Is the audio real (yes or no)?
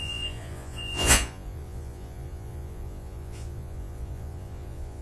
no